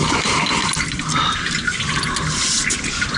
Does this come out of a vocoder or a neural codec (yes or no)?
no